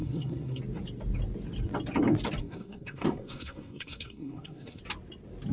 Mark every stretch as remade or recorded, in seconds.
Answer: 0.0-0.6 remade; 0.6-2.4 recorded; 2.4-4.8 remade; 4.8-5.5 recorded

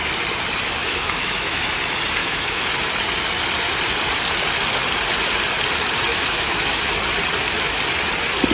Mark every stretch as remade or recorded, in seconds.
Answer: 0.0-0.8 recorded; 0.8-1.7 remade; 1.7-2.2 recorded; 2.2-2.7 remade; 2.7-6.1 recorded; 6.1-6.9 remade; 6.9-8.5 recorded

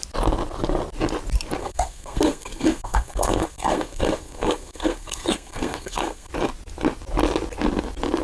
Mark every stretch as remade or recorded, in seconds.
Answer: 0.0-1.6 recorded; 1.6-6.3 remade; 6.3-8.2 recorded